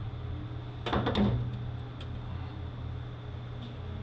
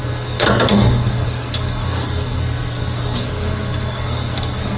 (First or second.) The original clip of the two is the first